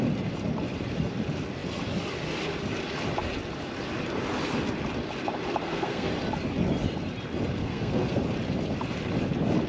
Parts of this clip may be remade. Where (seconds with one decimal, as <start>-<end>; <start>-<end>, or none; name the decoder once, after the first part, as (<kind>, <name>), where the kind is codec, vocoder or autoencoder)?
5.6-6.1 (codec, SNAC); 7.6-8.2